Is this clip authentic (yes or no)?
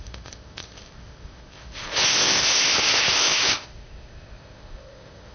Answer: no